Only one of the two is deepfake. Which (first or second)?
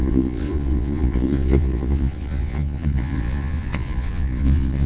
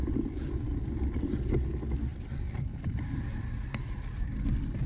first